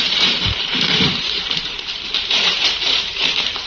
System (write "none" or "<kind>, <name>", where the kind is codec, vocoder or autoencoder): vocoder, BigVGAN v2